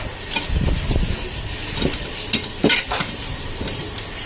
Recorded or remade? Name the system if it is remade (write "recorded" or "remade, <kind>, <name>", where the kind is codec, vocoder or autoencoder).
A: remade, vocoder, BigVGAN v2